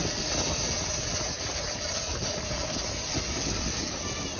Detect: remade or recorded recorded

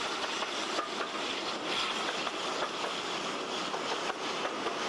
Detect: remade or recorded recorded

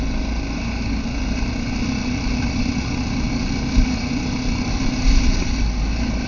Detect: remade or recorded recorded